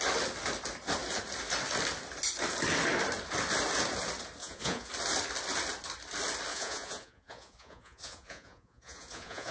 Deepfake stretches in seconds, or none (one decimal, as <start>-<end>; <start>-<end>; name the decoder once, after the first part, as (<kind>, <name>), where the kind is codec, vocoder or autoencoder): 4.4-4.9 (vocoder, Vocos); 6.5-9.5